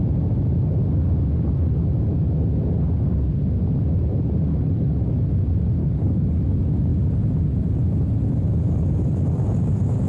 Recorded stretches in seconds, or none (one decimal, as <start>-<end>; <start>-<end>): 0.0-5.8; 6.4-10.1